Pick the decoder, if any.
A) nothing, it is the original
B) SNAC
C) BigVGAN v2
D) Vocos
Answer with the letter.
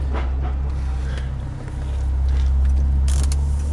A